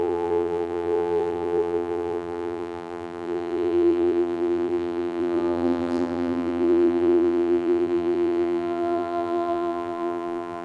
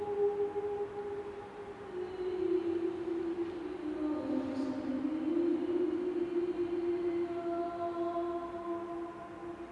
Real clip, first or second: second